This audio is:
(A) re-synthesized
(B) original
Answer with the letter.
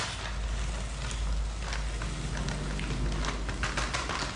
B